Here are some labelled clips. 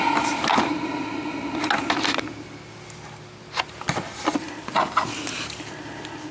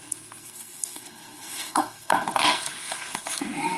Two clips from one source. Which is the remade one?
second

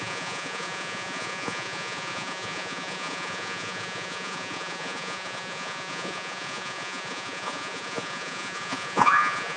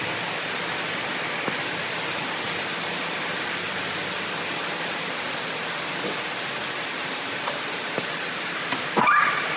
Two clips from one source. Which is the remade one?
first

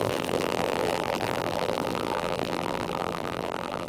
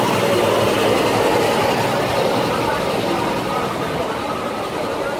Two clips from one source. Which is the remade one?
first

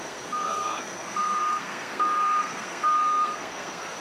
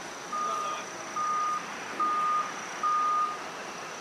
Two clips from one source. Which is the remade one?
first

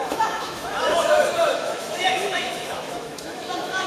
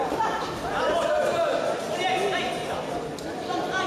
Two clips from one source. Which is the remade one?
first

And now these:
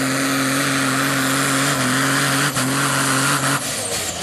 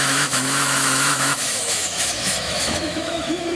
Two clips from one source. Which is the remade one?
second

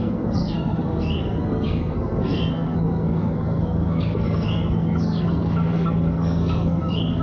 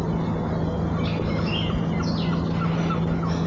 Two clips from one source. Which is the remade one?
first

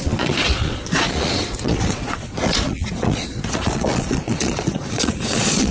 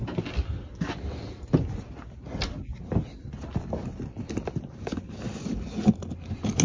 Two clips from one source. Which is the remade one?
first